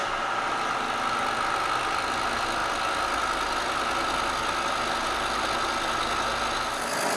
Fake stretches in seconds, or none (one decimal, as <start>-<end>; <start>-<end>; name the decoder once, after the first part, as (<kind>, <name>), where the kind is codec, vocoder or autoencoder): none